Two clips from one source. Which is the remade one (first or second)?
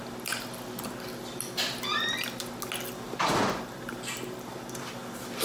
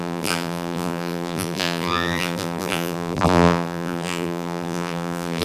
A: second